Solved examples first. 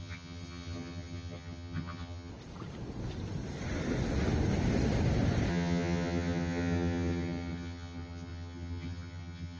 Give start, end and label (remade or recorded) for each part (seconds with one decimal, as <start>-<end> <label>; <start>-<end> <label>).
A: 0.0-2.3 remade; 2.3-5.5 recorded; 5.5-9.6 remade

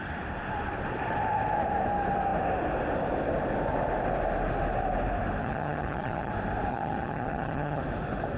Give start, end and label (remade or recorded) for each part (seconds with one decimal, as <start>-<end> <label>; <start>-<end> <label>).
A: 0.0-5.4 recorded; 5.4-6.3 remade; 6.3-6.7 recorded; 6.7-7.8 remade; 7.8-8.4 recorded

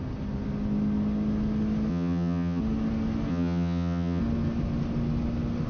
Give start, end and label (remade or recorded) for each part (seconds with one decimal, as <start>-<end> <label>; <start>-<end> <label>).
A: 0.0-1.9 recorded; 1.9-2.6 remade; 2.6-3.3 recorded; 3.3-4.2 remade; 4.2-5.7 recorded